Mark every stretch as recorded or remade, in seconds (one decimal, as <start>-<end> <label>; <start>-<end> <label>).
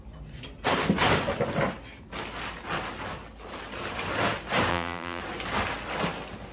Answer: 0.0-4.7 recorded; 4.7-5.2 remade; 5.2-6.5 recorded